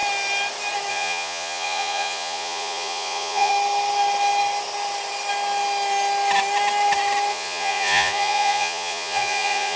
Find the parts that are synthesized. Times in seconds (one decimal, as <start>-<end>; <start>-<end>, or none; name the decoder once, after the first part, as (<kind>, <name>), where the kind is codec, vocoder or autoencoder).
0.9-3.5 (vocoder, Vocos); 7.3-9.8